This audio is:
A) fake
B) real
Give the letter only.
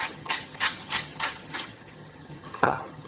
A